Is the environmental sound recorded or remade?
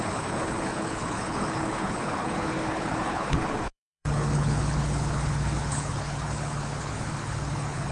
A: remade